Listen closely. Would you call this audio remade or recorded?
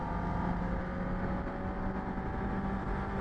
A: recorded